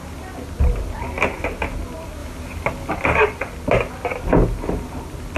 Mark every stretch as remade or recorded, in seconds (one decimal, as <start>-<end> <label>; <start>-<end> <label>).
0.0-5.4 recorded